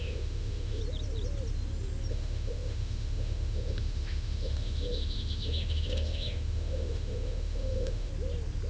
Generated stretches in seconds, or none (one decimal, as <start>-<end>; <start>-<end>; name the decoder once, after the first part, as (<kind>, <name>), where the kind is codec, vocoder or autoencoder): 0.0-0.8 (autoencoder, DAC-VAE); 2.1-8.1